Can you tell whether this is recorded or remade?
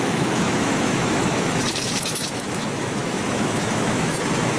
remade